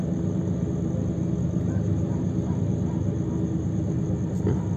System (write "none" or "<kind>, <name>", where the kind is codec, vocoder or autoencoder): none